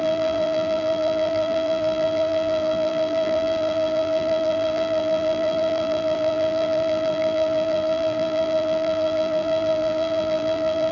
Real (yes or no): no